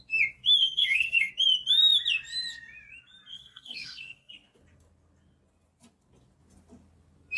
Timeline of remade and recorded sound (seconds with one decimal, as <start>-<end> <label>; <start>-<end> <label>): 0.0-0.6 recorded; 0.6-1.3 remade; 1.3-3.3 recorded; 3.3-4.3 remade; 4.3-7.4 recorded